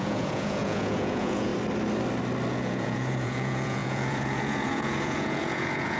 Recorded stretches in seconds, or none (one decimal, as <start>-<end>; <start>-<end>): 1.5-2.5